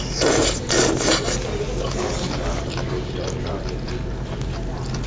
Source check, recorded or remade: recorded